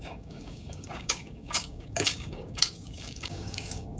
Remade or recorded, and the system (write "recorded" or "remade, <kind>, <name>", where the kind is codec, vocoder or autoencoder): remade, codec, DAC